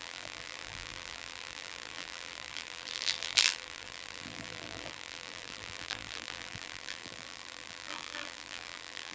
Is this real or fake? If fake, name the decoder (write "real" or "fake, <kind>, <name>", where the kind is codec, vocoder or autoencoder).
fake, vocoder, BigVGAN v2